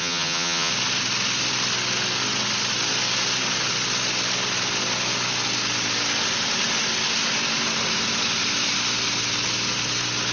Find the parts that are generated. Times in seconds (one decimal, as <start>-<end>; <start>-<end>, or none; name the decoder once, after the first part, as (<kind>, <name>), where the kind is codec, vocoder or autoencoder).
0.0-0.7 (vocoder, HiFi-GAN)